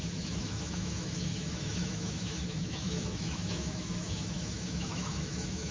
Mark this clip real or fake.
fake